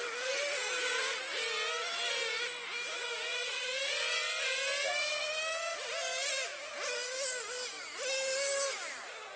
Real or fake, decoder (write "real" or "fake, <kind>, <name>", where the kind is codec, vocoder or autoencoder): real